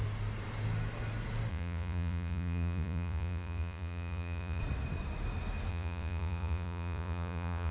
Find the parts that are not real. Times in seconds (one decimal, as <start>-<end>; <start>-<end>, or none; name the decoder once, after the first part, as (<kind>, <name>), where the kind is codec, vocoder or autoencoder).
1.5-4.6 (vocoder, Vocos); 5.7-7.7